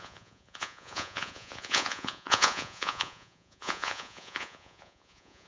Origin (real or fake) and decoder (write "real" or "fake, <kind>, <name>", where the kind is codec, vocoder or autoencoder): fake, vocoder, Vocos